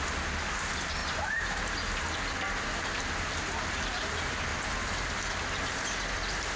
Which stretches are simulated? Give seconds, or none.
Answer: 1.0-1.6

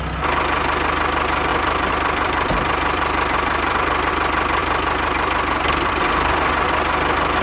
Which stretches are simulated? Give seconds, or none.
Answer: 1.5-4.1; 4.6-5.9

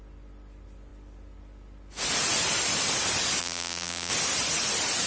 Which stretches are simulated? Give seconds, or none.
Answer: 3.4-4.1